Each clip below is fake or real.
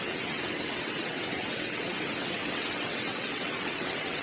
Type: fake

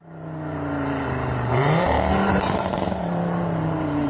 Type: fake